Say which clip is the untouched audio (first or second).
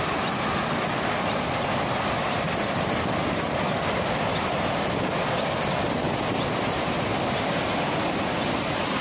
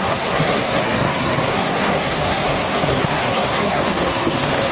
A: first